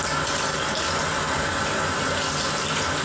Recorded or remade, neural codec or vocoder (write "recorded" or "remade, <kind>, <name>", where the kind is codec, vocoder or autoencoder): recorded